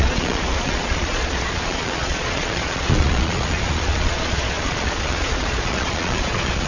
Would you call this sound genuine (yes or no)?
no